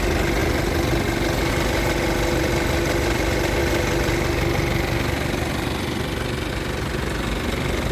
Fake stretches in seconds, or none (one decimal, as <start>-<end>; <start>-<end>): none